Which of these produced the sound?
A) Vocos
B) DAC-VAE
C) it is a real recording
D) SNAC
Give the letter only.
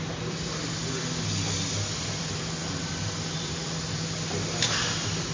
C